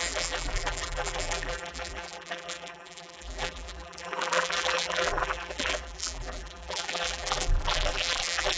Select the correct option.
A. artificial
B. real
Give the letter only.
A